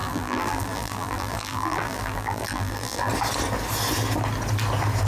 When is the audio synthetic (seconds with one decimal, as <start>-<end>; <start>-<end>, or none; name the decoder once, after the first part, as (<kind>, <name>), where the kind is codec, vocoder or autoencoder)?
0.0-3.1 (vocoder, BigVGAN v2)